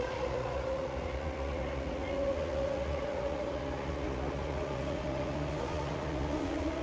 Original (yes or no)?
no